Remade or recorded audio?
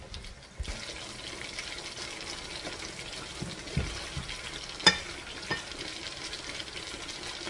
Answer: recorded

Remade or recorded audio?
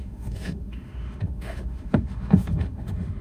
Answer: remade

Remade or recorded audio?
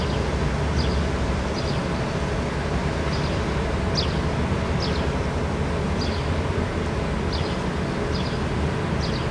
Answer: recorded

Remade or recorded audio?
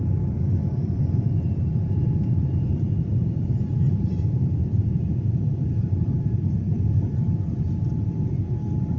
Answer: remade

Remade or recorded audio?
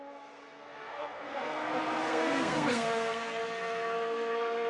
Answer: remade